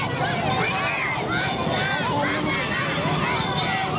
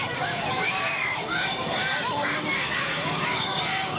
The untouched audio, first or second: first